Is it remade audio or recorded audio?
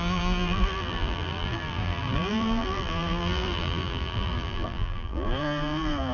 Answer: remade